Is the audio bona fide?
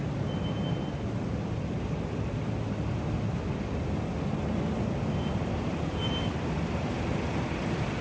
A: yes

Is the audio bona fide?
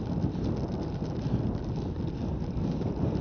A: yes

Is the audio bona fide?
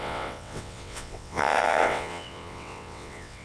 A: no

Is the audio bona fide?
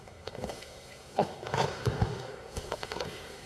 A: no